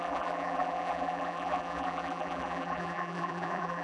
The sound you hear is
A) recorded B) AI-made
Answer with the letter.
B